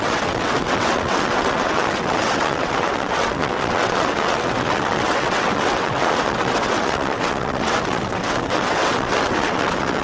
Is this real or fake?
fake